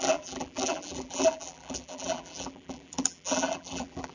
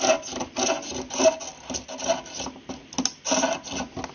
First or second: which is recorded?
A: second